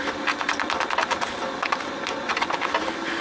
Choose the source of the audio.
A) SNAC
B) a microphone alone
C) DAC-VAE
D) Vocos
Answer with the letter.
B